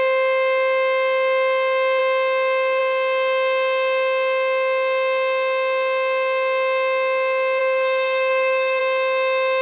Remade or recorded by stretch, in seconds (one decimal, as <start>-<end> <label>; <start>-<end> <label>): 0.0-7.6 recorded; 7.6-8.8 remade; 8.8-9.6 recorded